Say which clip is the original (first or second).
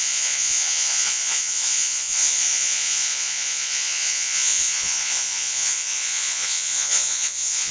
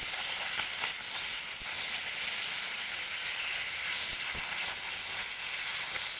second